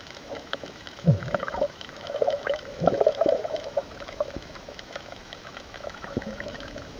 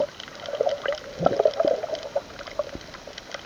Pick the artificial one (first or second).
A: first